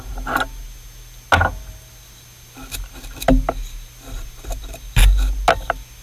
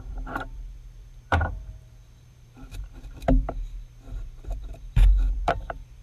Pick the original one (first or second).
first